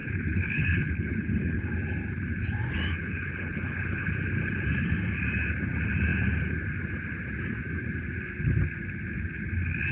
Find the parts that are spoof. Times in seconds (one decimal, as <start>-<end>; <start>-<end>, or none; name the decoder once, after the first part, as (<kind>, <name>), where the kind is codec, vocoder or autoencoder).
0.0-1.7 (codec, HILCodec); 3.0-4.1